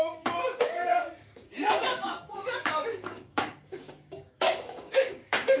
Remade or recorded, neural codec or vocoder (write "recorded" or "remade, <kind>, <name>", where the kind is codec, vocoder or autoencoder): remade, codec, DAC